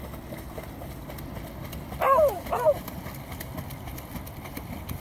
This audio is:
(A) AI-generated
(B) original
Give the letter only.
B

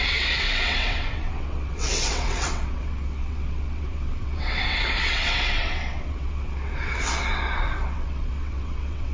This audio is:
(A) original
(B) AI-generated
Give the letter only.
B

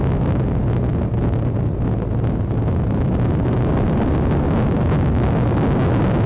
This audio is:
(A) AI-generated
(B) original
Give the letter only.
B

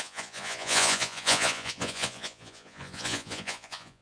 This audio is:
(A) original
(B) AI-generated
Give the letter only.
B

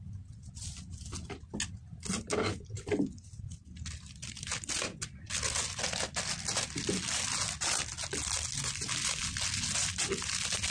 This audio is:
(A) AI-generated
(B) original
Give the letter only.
B